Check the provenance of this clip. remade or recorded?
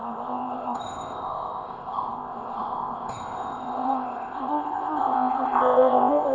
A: remade